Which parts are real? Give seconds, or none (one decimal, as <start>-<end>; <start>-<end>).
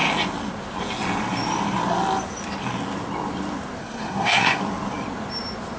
0.0-3.8; 4.6-5.8